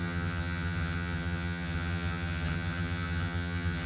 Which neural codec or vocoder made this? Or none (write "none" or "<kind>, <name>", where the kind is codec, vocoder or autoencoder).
vocoder, HiFi-GAN